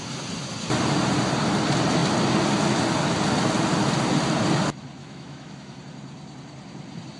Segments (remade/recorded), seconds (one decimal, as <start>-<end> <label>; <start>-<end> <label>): 0.0-5.0 recorded; 5.0-5.8 remade; 5.8-7.2 recorded